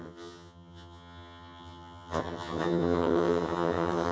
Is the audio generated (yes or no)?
yes